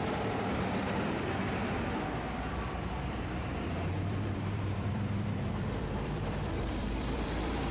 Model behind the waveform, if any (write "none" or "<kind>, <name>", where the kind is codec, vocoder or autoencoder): vocoder, BigVGAN v2